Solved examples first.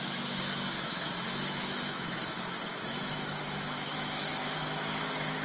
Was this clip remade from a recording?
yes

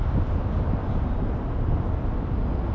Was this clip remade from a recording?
no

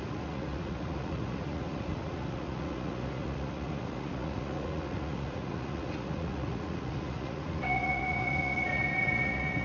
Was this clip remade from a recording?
yes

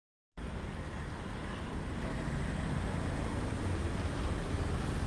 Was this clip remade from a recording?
no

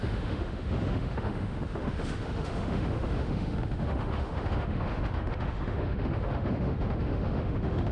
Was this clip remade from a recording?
yes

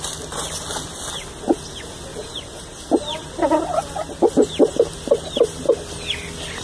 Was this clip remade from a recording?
no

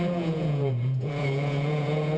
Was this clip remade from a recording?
yes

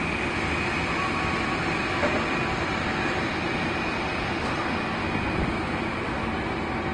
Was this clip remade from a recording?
no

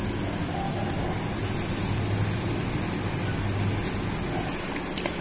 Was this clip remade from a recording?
no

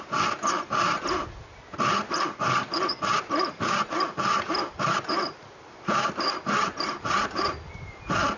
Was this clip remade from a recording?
no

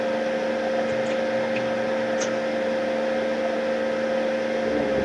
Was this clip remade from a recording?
no